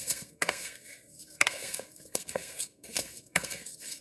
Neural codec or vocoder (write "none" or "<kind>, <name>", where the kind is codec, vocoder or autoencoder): codec, SNAC